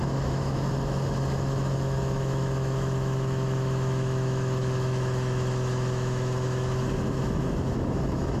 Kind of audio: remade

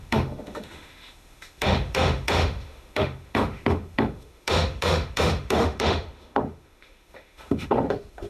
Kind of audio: remade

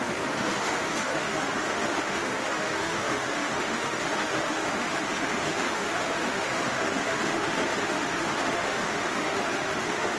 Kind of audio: remade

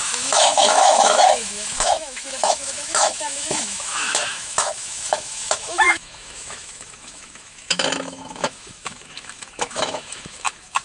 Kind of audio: remade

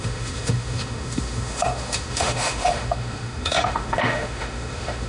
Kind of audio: remade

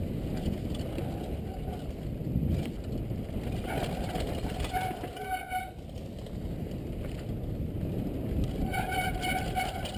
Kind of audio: recorded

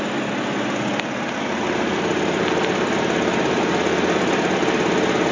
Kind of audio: recorded